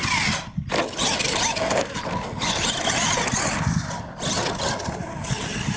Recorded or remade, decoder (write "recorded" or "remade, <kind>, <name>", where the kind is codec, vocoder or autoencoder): recorded